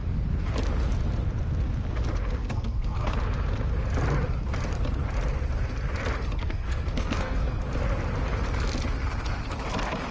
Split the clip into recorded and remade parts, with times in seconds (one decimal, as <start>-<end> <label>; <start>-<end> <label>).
0.0-2.4 recorded; 2.4-3.1 remade; 3.1-6.4 recorded; 6.4-7.6 remade; 7.6-10.1 recorded